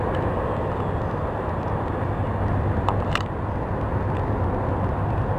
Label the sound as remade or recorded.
recorded